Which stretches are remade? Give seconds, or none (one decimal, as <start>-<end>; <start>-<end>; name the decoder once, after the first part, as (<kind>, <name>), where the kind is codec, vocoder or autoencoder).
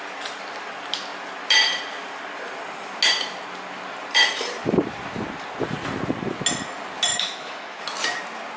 7.1-7.8 (autoencoder, DAC-VAE)